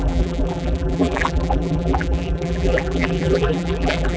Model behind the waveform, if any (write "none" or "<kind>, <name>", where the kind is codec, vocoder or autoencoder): vocoder, BigVGAN v2